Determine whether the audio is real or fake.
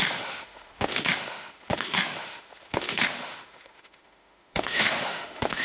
fake